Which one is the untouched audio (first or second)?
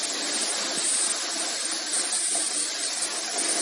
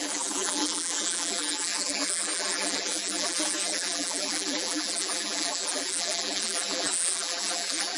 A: first